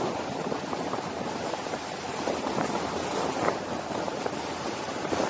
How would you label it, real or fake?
real